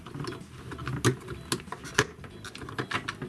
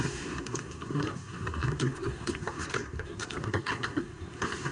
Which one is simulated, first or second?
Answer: second